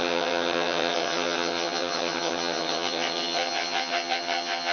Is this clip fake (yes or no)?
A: yes